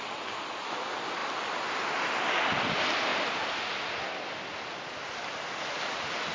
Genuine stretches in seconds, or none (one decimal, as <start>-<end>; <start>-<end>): 0.0-6.3